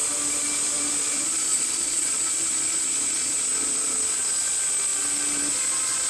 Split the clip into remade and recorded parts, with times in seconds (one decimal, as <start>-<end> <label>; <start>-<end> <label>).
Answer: 0.0-1.5 recorded; 1.5-2.1 remade; 2.1-6.1 recorded